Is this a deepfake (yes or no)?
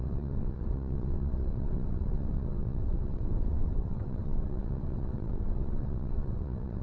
yes